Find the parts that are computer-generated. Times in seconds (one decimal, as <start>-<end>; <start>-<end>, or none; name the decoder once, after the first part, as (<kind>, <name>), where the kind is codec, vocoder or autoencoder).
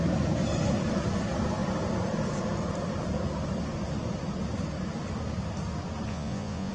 6.1-6.7 (vocoder, Vocos)